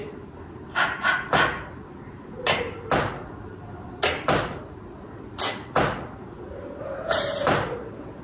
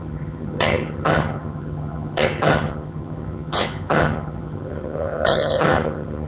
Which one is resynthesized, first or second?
second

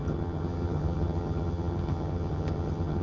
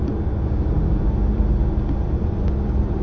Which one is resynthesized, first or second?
first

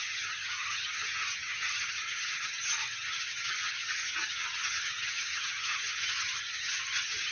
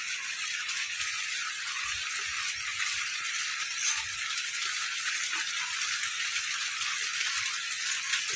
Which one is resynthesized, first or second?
first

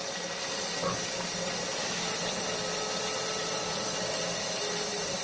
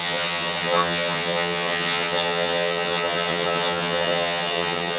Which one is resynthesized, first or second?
second